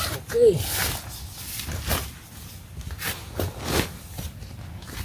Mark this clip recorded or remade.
recorded